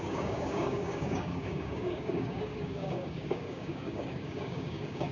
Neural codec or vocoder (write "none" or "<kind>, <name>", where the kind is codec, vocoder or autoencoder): codec, DAC